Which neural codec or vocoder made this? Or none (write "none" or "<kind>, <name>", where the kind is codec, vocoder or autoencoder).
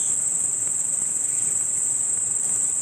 none